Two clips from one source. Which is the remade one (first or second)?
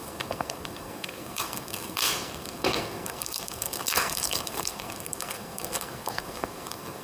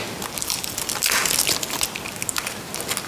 first